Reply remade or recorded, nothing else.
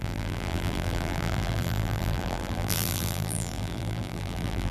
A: remade